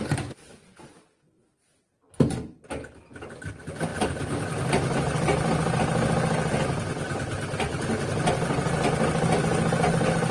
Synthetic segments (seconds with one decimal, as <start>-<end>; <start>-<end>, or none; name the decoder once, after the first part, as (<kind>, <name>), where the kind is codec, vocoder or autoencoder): none